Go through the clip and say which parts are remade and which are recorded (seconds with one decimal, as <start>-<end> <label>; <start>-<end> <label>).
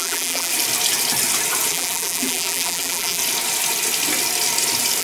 0.0-0.5 remade; 0.5-1.7 recorded; 1.7-3.2 remade; 3.2-5.0 recorded